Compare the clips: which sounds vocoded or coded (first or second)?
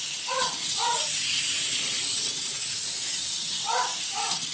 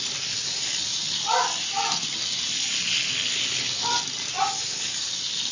first